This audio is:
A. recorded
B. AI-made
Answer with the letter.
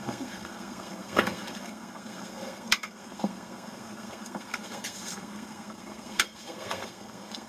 B